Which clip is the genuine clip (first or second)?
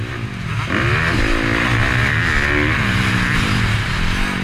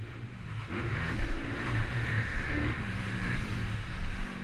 first